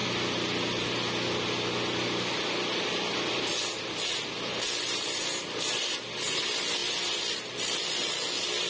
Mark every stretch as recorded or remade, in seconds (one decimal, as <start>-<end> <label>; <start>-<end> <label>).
0.0-8.7 recorded